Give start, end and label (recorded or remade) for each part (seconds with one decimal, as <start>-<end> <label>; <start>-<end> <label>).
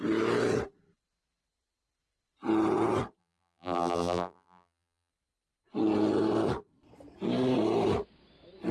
0.0-3.2 recorded; 3.2-5.1 remade; 5.1-8.7 recorded